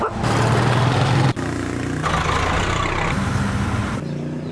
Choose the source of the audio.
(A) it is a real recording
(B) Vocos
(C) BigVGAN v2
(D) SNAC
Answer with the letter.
A